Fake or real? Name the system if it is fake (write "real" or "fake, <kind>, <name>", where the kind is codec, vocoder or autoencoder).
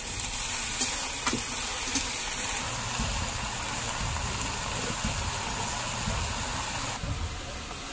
real